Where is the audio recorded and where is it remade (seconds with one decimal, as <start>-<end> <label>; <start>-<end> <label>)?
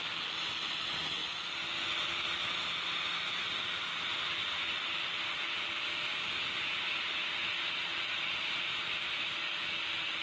0.0-6.3 recorded; 6.3-7.8 remade; 7.8-10.2 recorded